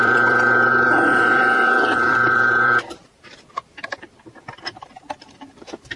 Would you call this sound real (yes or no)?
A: no